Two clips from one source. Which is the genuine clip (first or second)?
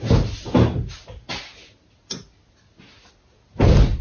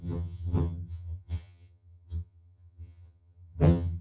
first